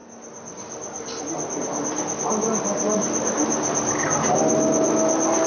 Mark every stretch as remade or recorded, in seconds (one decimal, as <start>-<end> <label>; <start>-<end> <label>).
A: 0.0-5.5 recorded